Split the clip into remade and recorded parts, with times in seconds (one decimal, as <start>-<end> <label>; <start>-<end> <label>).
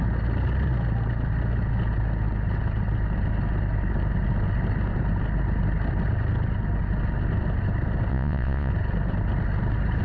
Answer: 0.0-8.1 recorded; 8.1-8.7 remade; 8.7-10.0 recorded